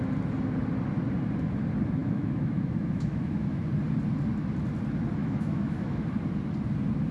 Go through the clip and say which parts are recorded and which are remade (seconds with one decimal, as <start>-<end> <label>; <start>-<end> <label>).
0.0-2.0 recorded; 2.0-3.6 remade; 3.6-5.2 recorded; 5.2-6.1 remade; 6.1-7.1 recorded